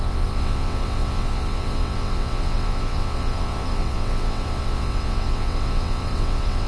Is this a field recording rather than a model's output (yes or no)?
no